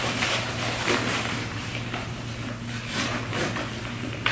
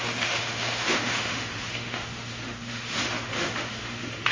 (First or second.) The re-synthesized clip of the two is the second